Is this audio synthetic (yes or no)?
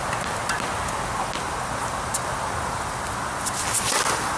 no